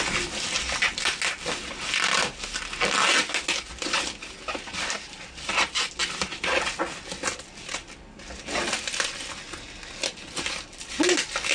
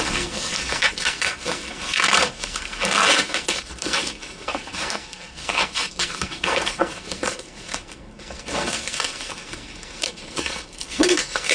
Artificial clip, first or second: second